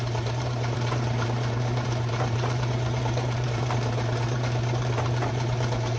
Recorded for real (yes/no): no